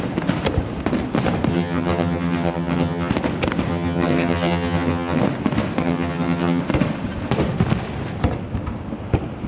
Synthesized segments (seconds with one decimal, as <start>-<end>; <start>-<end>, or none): 1.5-3.1; 3.7-5.2; 5.8-6.6